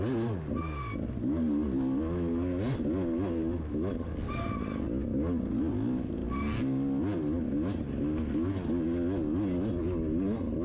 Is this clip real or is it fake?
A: real